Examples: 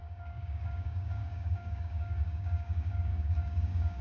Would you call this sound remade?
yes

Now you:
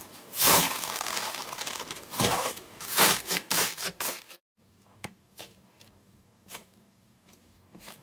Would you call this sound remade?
yes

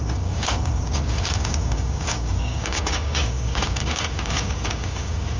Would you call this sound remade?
yes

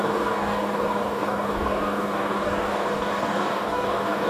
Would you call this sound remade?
yes